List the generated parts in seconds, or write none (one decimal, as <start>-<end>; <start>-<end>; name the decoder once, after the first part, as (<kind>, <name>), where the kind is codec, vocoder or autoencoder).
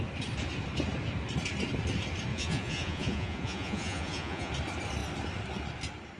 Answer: 2.3-4.5 (vocoder, Vocos)